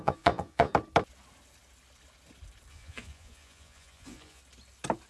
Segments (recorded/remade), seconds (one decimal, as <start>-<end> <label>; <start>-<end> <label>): 0.0-0.7 remade; 0.7-2.7 recorded; 2.7-4.4 remade; 4.4-5.1 recorded